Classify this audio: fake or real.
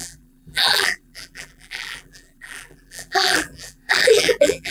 fake